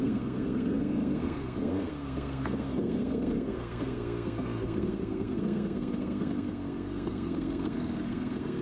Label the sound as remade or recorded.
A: remade